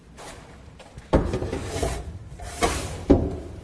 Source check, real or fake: fake